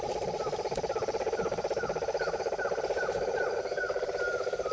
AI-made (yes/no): yes